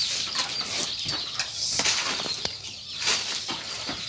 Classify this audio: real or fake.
real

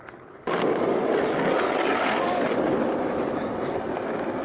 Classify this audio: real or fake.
real